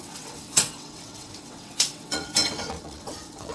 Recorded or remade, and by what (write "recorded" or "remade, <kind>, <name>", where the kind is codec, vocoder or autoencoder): remade, vocoder, WaveNeXt